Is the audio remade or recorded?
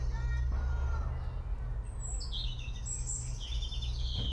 recorded